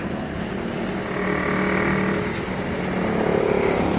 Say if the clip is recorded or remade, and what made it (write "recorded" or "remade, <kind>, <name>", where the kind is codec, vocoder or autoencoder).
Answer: recorded